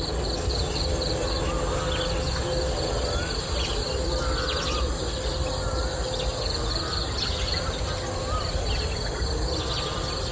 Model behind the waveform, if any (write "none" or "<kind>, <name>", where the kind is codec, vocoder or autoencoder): none